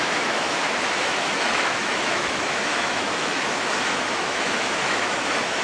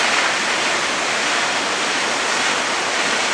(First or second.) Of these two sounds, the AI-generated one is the first